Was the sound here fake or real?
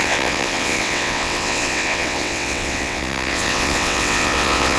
fake